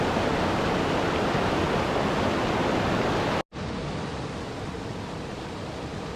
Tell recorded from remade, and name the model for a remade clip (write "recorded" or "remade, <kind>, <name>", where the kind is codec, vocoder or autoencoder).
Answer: recorded